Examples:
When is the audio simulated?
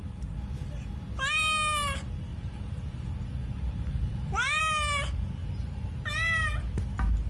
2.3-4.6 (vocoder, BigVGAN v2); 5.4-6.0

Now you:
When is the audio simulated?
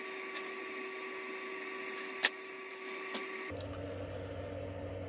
none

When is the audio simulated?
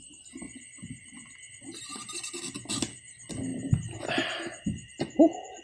2.0-2.6 (vocoder, BigVGAN v2); 3.5-4.9